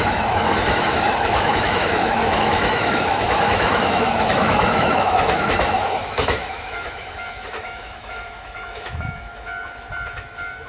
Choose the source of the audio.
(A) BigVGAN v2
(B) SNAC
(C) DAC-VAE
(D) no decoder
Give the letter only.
C